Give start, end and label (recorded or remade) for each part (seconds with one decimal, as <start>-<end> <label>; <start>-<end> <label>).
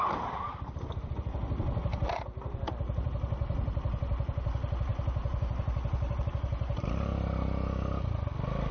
0.0-8.7 recorded